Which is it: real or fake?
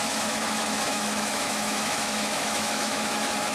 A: fake